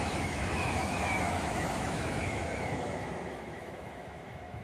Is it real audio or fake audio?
fake